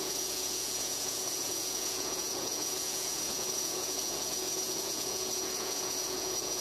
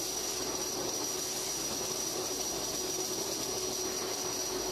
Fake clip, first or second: first